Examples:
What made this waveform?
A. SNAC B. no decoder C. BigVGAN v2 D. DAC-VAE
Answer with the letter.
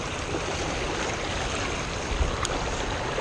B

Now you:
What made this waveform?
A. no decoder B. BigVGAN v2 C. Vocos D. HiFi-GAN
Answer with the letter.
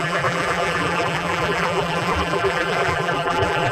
B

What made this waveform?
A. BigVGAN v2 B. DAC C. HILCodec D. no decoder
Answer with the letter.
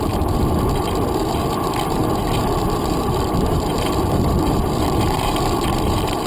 A